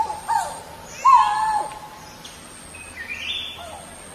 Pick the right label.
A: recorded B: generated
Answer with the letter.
A